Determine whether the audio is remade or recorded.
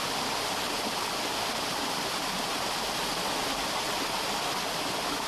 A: recorded